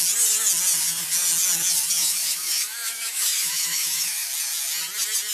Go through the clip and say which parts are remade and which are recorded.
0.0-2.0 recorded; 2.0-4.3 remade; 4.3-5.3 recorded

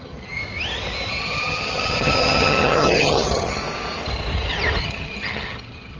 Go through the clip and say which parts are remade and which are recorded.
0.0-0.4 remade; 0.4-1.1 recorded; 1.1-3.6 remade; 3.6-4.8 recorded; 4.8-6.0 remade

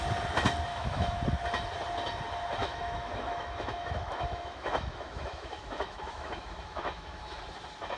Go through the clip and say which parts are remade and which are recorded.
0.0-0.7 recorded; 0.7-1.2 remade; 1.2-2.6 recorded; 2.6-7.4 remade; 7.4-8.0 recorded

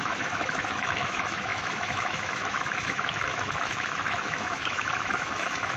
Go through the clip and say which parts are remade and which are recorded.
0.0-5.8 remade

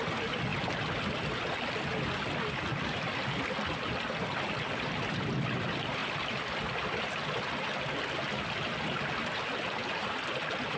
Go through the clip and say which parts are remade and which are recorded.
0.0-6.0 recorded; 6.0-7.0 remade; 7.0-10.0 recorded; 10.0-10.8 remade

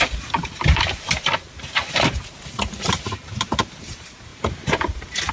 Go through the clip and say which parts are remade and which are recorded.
0.0-5.3 remade